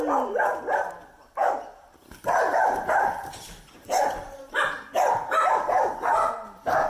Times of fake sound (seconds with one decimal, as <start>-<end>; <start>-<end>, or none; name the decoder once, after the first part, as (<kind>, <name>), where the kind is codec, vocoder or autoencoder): 1.4-5.5 (vocoder, BigVGAN v2)

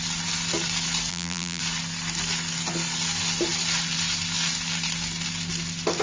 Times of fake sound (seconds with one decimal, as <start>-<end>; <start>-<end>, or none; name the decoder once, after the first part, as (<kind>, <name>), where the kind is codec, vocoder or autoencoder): 1.1-1.6 (vocoder, BigVGAN v2)

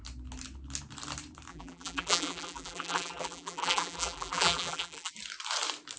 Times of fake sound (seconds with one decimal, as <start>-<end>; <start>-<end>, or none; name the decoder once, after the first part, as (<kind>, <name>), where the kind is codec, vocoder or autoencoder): 1.5-5.1 (vocoder, BigVGAN v2)

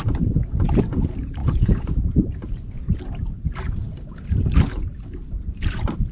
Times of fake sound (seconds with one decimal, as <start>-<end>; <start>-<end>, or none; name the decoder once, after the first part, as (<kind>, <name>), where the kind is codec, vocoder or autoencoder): 0.0-6.1 (vocoder, BigVGAN v2)

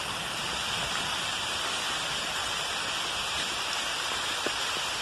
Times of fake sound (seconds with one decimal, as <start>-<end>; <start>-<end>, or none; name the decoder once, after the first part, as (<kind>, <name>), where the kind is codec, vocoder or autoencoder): 2.4-3.6 (vocoder, BigVGAN v2)

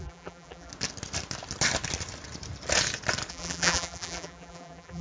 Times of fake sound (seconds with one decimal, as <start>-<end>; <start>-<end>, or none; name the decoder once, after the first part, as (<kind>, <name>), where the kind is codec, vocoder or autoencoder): 0.0-0.7 (vocoder, BigVGAN v2); 3.3-5.0

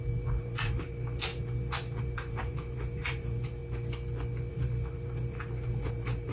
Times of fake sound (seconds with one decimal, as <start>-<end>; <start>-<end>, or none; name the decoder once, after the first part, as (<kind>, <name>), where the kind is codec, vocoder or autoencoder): 0.0-3.6 (vocoder, BigVGAN v2); 4.5-6.3

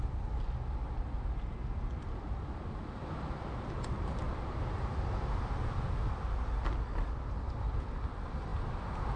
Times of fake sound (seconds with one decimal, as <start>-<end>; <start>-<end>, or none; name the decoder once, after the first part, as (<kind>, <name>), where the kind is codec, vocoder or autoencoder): none